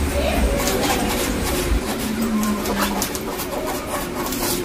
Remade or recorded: remade